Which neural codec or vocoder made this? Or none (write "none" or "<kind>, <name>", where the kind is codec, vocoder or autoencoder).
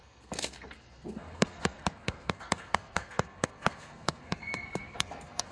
codec, SNAC